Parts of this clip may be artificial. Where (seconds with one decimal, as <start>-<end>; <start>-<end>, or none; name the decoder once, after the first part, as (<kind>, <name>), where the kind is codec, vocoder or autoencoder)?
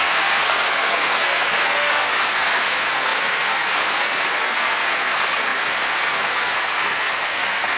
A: 0.0-7.8 (codec, SNAC)